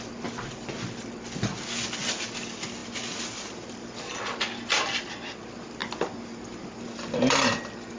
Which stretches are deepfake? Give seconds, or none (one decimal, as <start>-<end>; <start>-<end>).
none